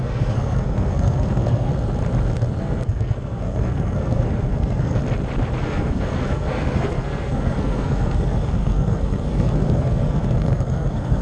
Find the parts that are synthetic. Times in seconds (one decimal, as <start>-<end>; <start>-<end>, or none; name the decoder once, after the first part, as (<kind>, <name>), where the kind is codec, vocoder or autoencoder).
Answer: 0.0-1.7 (codec, SNAC); 2.6-5.0; 5.6-11.2